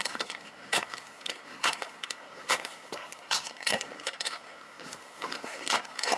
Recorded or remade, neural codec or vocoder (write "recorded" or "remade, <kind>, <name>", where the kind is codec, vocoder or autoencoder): remade, codec, SNAC